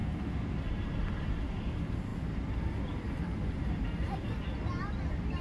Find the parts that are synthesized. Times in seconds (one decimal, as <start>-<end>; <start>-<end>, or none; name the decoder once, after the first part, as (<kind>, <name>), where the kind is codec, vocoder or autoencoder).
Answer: 0.0-0.9 (vocoder, BigVGAN v2)